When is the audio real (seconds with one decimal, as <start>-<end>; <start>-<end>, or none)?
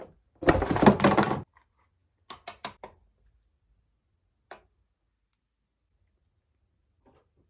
0.0-7.5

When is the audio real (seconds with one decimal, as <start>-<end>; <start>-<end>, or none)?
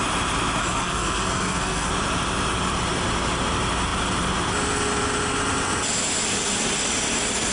0.0-0.6; 1.9-7.5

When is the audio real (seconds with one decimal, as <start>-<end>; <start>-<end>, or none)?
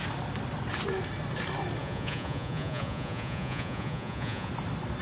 0.0-1.8; 4.5-5.0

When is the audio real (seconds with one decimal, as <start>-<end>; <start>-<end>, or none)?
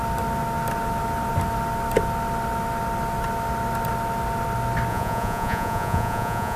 0.0-4.9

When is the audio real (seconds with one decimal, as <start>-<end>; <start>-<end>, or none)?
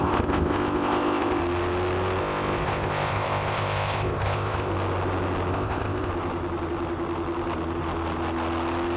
1.4-2.2; 4.7-5.5; 6.1-9.0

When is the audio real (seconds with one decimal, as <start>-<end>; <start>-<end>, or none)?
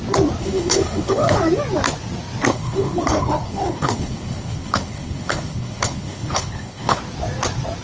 0.0-0.4; 1.4-2.5; 7.0-7.8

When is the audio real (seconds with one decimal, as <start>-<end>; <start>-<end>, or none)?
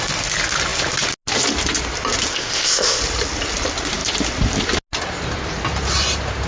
0.0-2.3; 3.0-6.5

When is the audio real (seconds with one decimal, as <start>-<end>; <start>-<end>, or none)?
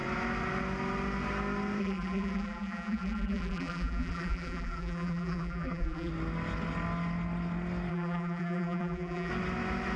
0.0-1.8; 6.1-7.9; 9.3-10.0